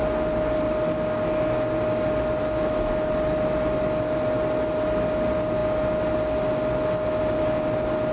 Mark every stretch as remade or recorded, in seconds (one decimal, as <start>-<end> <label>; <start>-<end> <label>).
0.0-8.1 recorded